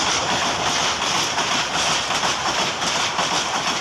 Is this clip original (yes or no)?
yes